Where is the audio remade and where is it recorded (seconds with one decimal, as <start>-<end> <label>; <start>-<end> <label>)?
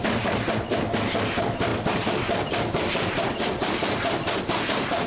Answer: 0.0-5.1 recorded